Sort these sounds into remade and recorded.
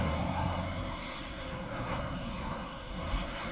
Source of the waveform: remade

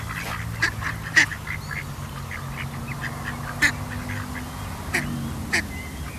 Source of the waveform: recorded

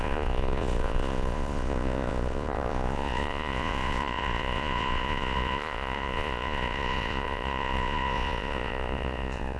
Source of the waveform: remade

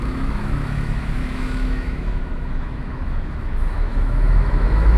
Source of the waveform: remade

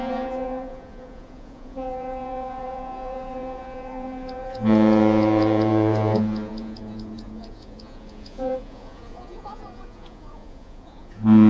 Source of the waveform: remade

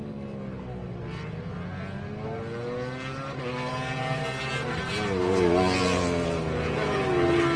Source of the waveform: recorded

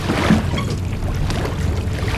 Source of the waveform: recorded